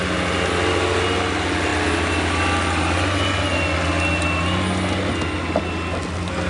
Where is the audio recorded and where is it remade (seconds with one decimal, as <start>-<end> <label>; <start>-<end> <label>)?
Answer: 0.0-6.5 recorded